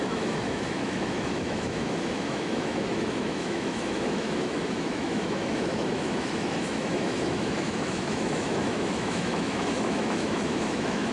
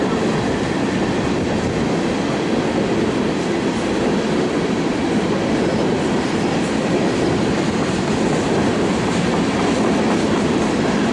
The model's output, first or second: first